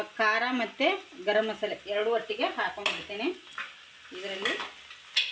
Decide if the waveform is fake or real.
real